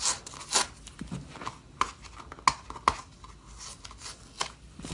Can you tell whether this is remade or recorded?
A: recorded